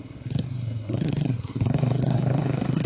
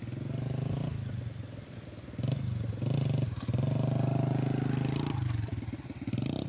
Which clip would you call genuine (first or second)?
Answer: second